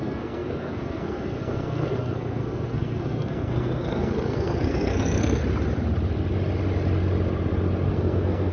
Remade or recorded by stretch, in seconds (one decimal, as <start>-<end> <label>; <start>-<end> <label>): 0.0-5.4 remade; 5.4-7.9 recorded; 7.9-8.5 remade